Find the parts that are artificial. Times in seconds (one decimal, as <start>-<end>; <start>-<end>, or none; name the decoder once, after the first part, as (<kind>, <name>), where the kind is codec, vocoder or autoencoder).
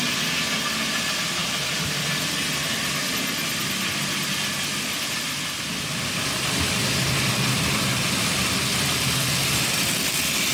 none